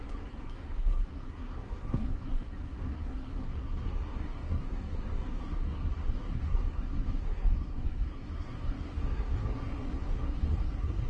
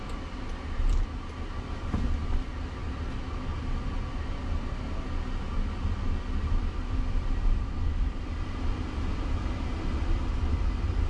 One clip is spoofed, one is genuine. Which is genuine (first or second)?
second